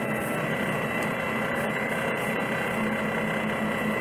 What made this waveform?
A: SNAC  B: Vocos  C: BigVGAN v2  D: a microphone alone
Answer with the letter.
D